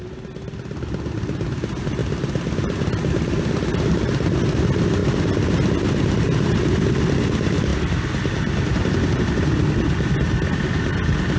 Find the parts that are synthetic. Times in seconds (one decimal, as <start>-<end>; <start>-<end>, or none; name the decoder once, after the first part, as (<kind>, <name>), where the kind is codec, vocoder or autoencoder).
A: 7.7-9.2 (vocoder, BigVGAN v2)